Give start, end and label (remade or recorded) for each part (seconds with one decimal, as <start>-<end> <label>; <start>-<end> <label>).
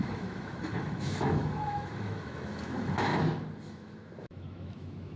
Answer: 0.0-3.1 remade; 3.1-3.7 recorded; 3.7-5.2 remade